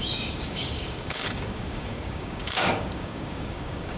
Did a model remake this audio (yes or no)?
yes